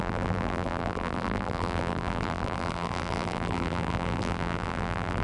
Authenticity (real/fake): fake